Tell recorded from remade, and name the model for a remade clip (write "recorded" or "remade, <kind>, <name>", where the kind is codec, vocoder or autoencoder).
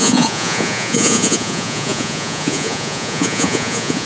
remade, vocoder, Vocos